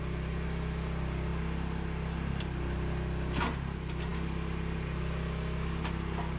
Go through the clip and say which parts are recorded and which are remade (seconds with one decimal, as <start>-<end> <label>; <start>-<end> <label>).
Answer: 0.0-6.4 recorded